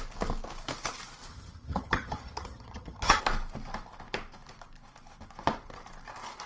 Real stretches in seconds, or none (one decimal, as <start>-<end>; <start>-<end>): 0.0-1.3; 3.2-6.5